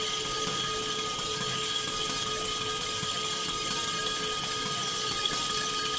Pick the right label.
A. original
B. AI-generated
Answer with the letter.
A